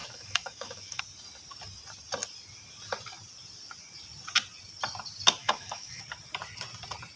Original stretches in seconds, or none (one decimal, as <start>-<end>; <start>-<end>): 1.0-5.4; 6.0-7.2